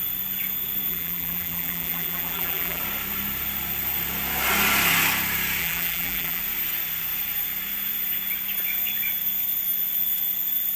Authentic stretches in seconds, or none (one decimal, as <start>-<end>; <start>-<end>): 0.0-0.9; 2.8-5.6; 6.4-10.8